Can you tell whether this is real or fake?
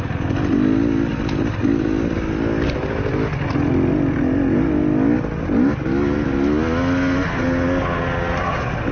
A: real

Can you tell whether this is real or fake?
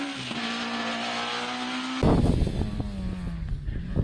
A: real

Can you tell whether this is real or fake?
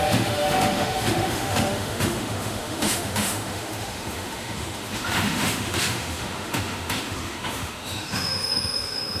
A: fake